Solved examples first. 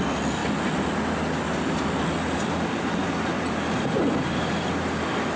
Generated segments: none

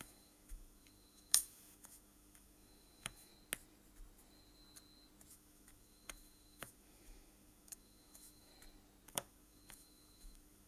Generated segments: 0.0-3.3 (autoencoder, DAC-VAE); 5.3-8.5; 9.1-10.7

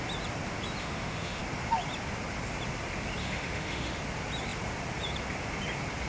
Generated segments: 0.8-1.4 (autoencoder, DAC-VAE); 3.2-4.0